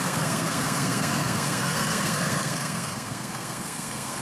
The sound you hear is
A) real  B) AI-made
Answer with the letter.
B